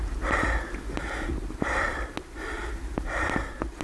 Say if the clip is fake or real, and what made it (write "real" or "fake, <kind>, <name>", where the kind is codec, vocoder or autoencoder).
real